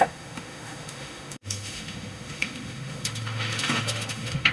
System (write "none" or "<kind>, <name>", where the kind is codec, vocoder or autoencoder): autoencoder, DAC-VAE